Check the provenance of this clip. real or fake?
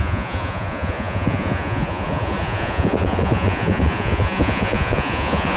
fake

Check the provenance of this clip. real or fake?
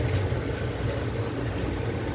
real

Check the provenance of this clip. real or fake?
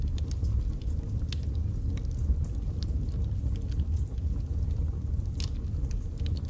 real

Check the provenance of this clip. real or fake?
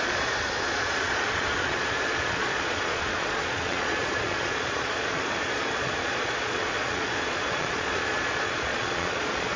fake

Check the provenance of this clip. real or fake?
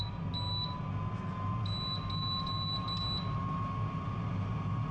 real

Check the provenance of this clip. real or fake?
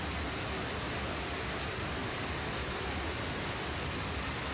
real